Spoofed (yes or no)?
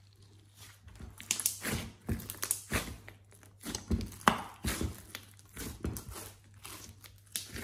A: no